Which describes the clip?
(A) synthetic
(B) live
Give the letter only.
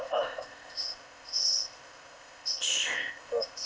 A